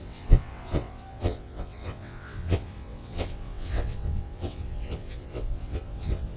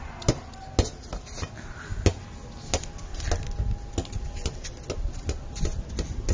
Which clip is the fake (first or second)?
first